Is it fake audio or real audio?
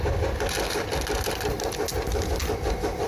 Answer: real